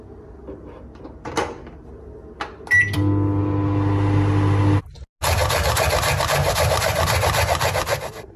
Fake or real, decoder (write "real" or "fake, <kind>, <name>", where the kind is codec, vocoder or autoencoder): real